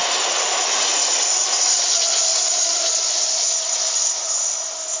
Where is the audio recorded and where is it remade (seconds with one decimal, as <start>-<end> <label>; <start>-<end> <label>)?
0.0-2.3 recorded; 2.3-4.6 remade; 4.6-5.0 recorded